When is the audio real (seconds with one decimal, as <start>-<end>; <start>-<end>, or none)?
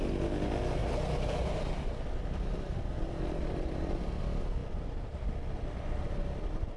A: 0.0-6.8